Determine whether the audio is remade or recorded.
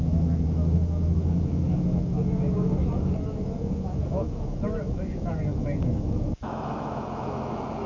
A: remade